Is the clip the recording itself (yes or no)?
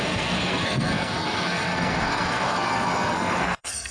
no